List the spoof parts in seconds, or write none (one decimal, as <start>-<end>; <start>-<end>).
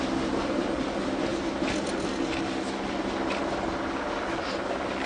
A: none